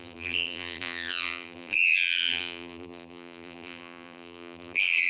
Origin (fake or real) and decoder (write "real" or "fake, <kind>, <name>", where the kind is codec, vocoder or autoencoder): fake, vocoder, BigVGAN v2